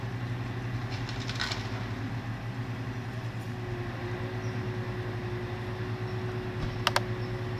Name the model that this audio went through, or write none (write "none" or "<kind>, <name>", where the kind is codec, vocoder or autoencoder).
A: none